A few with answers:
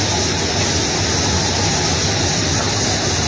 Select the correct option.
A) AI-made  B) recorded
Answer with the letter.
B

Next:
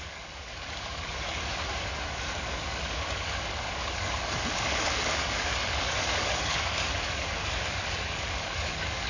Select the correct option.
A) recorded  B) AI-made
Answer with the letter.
B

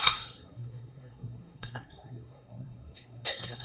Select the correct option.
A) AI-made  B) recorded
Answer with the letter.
A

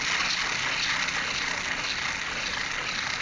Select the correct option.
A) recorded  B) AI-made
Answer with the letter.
A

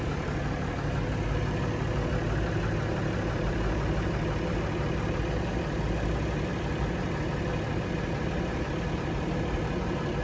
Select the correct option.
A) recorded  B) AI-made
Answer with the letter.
A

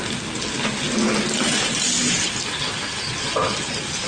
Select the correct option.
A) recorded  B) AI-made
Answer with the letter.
A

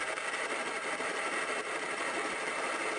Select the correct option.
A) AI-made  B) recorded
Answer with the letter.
A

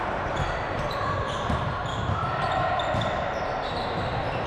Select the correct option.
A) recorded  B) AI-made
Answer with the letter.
B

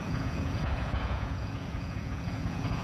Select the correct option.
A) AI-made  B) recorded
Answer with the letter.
A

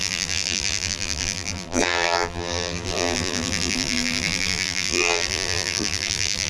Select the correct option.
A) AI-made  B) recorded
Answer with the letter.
A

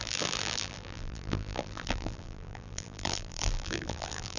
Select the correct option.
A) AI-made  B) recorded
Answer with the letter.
A